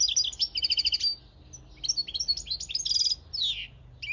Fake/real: real